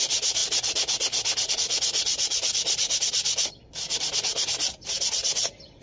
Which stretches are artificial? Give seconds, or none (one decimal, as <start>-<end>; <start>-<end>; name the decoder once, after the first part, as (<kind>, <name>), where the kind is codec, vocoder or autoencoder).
2.1-3.5 (vocoder, BigVGAN v2)